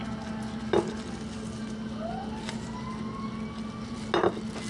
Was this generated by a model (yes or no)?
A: no